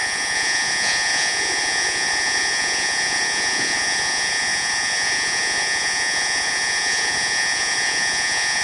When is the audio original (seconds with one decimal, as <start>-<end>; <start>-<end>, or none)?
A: none